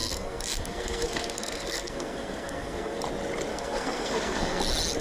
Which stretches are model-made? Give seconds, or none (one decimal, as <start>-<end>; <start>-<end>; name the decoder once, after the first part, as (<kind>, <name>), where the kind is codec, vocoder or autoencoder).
0.0-3.0 (codec, SNAC); 3.5-4.6

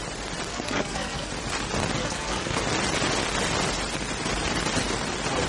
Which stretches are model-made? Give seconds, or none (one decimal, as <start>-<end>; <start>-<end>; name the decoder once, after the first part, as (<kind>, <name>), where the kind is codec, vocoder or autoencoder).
0.5-1.3 (codec, SNAC); 2.0-2.6

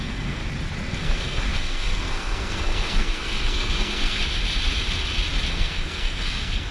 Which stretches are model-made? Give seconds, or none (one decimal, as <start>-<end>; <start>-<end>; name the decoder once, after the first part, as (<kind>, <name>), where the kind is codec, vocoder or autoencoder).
0.0-0.4 (codec, SNAC); 1.0-4.2; 5.5-6.7

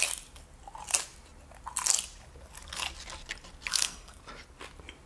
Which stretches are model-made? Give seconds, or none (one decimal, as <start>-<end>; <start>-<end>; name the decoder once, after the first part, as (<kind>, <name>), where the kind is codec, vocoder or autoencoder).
3.7-4.2 (codec, SNAC)

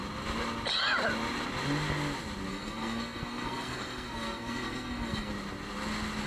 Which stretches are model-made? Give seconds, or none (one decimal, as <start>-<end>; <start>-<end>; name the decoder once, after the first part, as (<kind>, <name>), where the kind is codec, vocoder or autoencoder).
2.5-5.3 (codec, SNAC)

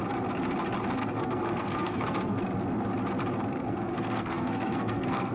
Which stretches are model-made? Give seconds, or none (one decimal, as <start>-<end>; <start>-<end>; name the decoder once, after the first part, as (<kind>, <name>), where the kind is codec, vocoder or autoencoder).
1.0-2.4 (codec, SNAC); 3.6-5.3